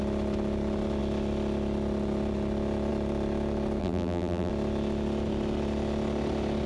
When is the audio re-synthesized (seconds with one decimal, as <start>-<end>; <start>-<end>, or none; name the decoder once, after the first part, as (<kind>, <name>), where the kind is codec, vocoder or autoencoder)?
3.8-4.5 (vocoder, BigVGAN v2)